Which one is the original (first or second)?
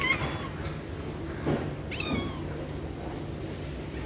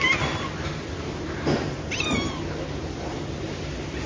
first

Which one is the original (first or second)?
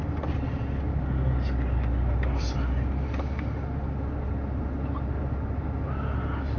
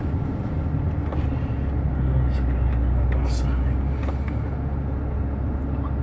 second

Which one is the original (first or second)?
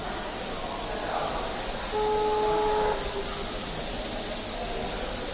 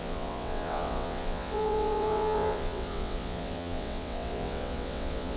first